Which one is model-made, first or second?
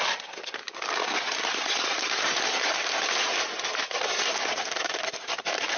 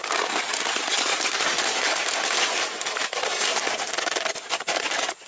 first